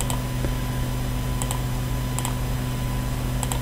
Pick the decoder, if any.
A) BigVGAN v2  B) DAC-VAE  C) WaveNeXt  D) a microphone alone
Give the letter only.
D